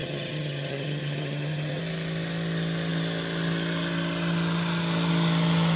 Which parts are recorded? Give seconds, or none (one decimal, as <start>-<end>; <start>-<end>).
1.8-5.8